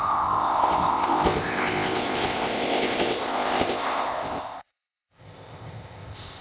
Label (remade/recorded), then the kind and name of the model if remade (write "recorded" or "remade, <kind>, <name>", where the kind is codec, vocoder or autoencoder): remade, codec, ZipCodec